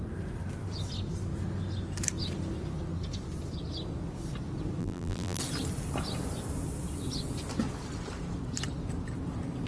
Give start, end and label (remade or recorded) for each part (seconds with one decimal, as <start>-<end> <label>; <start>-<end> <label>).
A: 0.0-4.8 recorded; 4.8-5.4 remade; 5.4-9.7 recorded